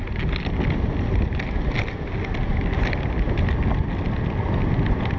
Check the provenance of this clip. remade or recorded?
recorded